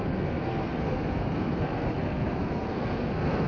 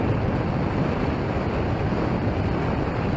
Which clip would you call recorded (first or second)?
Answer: second